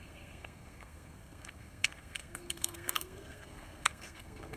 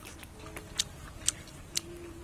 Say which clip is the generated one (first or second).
first